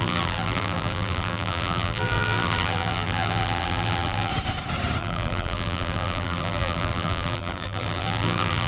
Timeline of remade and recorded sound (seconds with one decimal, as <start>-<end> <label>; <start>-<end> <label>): 0.0-4.3 remade; 4.3-5.0 recorded; 5.0-8.7 remade